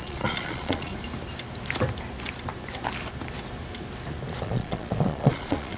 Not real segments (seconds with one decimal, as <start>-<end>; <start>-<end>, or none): 0.0-0.9; 4.4-5.8